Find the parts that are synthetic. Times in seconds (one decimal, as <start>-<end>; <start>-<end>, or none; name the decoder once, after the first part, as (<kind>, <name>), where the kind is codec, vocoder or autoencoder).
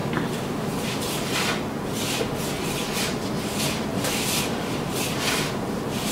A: 3.9-6.1 (vocoder, BigVGAN v2)